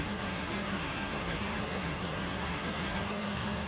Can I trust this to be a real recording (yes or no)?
no